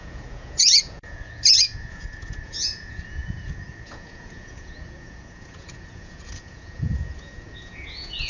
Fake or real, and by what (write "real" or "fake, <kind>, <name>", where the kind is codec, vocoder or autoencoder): fake, vocoder, Vocos